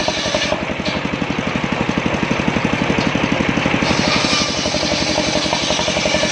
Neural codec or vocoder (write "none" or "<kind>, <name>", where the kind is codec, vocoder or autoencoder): none